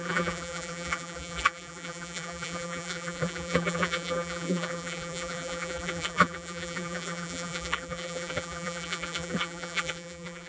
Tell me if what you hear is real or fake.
fake